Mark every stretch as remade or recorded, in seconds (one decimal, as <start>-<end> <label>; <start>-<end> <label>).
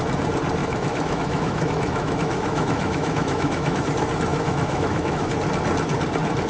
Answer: 0.0-0.6 recorded; 0.6-3.8 remade; 3.8-4.3 recorded; 4.3-5.3 remade; 5.3-6.5 recorded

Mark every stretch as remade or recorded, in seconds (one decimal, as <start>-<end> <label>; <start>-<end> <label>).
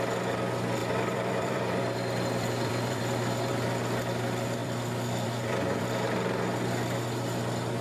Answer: 0.0-0.8 recorded; 0.8-3.5 remade; 3.5-4.6 recorded; 4.6-5.8 remade; 5.8-7.8 recorded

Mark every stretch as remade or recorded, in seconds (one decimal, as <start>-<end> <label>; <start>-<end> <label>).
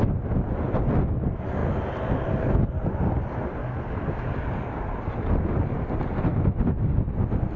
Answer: 0.0-7.6 recorded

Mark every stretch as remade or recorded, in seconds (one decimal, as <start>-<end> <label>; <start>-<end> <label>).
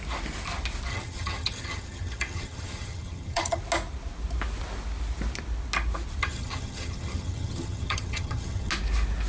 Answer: 0.0-0.9 recorded; 0.9-3.6 remade; 3.6-6.2 recorded; 6.2-8.7 remade; 8.7-9.3 recorded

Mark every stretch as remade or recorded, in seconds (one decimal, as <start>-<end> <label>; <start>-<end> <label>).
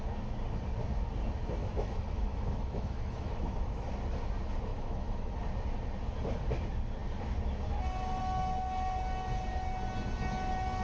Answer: 0.0-1.6 recorded; 1.6-3.9 remade; 3.9-4.7 recorded; 4.7-5.4 remade; 5.4-10.8 recorded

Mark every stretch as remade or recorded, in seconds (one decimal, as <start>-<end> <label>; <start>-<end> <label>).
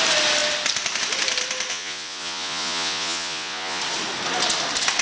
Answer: 0.0-1.7 recorded; 1.7-3.8 remade; 3.8-5.0 recorded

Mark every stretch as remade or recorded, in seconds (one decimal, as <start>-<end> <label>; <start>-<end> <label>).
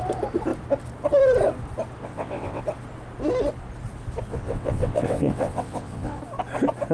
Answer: 0.0-2.0 recorded; 2.0-2.6 remade; 2.6-4.3 recorded; 4.3-6.2 remade; 6.2-6.9 recorded